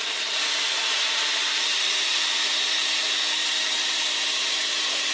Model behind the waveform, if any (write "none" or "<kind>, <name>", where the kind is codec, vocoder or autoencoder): vocoder, BigVGAN v2